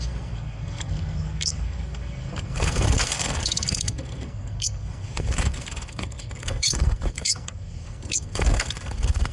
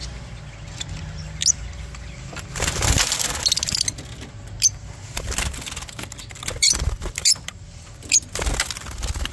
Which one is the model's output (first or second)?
first